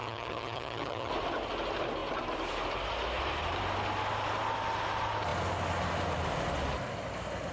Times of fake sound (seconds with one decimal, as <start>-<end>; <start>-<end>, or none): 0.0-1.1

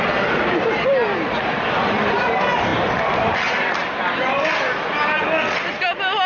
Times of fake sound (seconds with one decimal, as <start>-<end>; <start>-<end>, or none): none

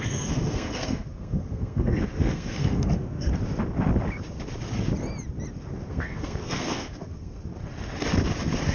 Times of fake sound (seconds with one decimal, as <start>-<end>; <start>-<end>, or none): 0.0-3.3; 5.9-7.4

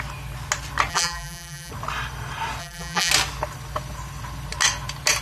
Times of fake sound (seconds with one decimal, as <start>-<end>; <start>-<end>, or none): 0.9-1.7; 2.6-3.1

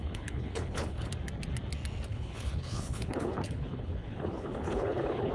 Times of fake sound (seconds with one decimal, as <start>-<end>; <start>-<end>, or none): 0.0-1.1; 2.1-5.3

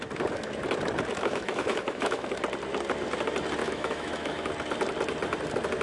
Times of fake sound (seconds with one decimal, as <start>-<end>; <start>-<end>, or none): 1.1-2.4; 3.6-4.5